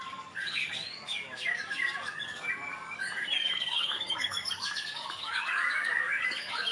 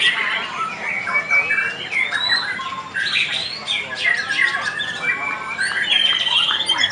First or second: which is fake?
first